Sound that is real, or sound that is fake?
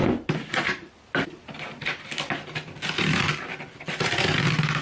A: real